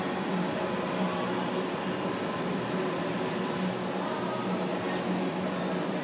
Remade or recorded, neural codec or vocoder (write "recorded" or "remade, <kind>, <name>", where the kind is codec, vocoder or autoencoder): recorded